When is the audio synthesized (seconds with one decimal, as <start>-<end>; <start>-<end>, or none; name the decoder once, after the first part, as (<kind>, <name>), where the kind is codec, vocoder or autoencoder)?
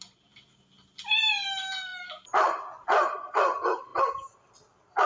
none